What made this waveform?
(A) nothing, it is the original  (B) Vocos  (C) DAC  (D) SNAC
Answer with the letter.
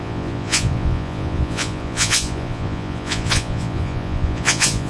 B